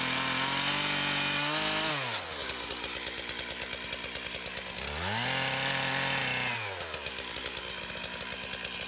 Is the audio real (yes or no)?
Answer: yes